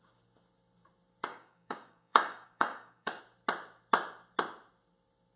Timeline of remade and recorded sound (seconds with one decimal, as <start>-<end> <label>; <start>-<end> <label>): 0.0-1.3 recorded; 1.3-3.2 remade; 3.2-5.4 recorded